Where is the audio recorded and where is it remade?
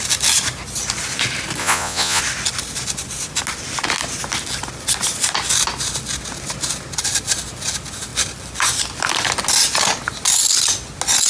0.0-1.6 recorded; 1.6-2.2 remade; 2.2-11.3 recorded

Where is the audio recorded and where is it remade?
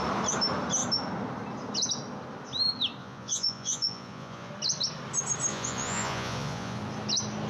0.0-3.0 recorded; 3.0-4.5 remade; 4.5-5.5 recorded; 5.5-6.8 remade; 6.8-7.5 recorded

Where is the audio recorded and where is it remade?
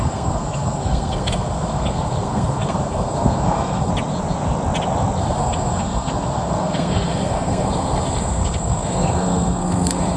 0.0-3.9 remade; 3.9-5.2 recorded; 5.2-10.2 remade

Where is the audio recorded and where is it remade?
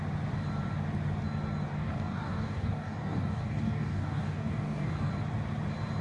0.0-1.7 recorded; 1.7-5.1 remade; 5.1-6.0 recorded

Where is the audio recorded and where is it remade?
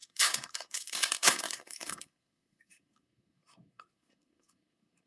0.0-5.1 remade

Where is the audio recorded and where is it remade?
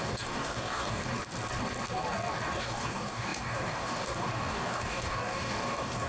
0.0-1.1 remade; 1.1-2.6 recorded; 2.6-6.1 remade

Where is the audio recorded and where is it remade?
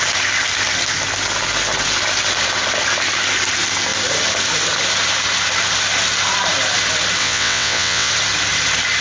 0.0-7.2 recorded; 7.2-8.1 remade; 8.1-9.0 recorded